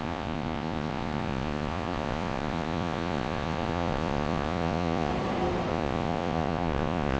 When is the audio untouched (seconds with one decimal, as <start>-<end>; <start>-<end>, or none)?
5.1-5.7